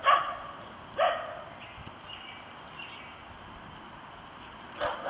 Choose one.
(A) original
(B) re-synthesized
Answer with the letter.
A